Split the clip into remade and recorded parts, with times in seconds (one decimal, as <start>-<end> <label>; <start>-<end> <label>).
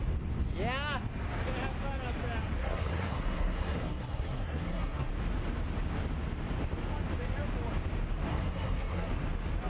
0.0-2.6 recorded; 2.6-5.1 remade; 5.1-8.3 recorded; 8.3-9.1 remade; 9.1-9.7 recorded